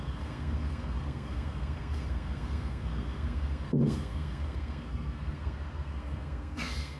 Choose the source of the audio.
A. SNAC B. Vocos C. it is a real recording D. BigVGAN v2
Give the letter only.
A